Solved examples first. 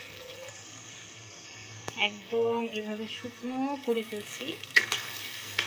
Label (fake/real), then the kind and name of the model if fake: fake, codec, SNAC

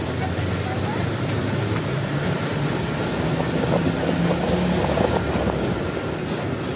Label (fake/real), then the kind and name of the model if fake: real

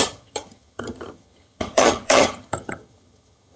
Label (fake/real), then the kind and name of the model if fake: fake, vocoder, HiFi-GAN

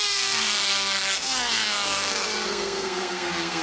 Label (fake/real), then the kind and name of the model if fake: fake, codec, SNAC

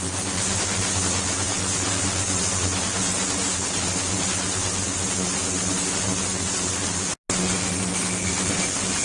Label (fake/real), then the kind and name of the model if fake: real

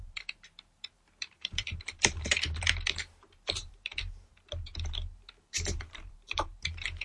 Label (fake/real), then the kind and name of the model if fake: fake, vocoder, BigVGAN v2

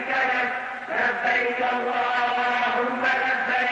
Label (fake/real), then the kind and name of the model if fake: fake, vocoder, Vocos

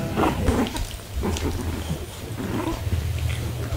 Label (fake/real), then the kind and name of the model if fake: real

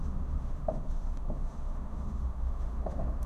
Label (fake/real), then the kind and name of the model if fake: fake, autoencoder, DAC-VAE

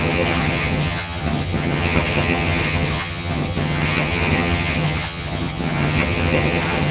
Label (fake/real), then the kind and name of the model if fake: fake, vocoder, HiFi-GAN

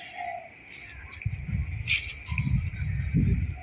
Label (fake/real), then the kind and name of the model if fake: real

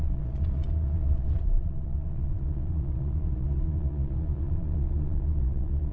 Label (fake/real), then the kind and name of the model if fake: fake, vocoder, Vocos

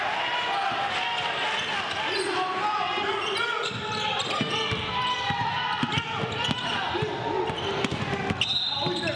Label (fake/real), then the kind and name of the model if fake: real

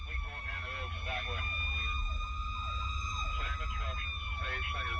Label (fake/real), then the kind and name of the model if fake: real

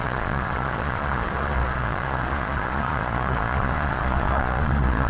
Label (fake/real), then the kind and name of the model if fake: fake, vocoder, Vocos